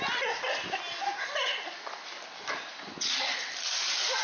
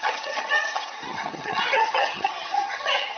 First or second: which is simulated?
second